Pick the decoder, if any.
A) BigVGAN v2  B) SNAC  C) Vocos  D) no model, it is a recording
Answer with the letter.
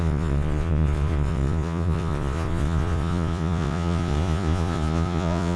C